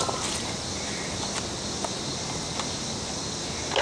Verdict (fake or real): real